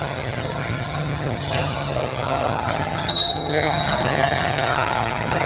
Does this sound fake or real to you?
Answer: fake